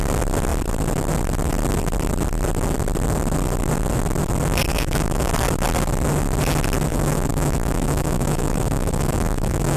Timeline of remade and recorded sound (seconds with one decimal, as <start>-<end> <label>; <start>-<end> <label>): 0.0-4.7 recorded; 4.7-5.3 remade; 5.3-6.9 recorded; 6.9-9.8 remade